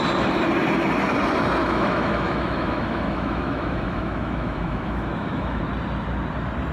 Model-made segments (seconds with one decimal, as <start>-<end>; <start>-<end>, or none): 1.6-5.6